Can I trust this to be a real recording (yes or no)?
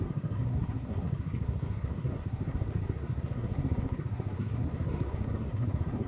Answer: no